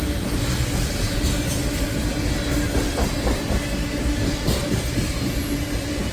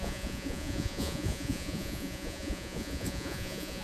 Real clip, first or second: first